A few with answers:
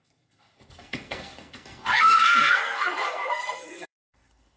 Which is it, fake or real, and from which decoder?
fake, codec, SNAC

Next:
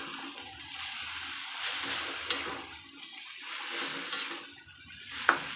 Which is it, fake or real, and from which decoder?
real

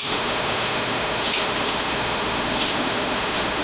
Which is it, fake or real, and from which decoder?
fake, autoencoder, DAC-VAE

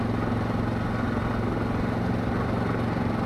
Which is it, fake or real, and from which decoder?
real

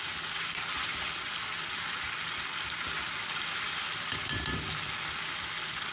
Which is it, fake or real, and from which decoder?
real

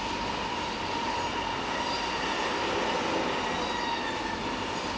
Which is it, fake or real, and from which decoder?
real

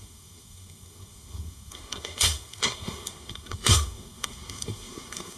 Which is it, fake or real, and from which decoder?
fake, codec, SNAC